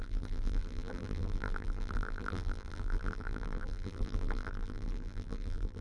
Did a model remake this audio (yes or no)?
yes